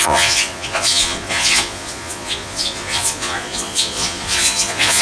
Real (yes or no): no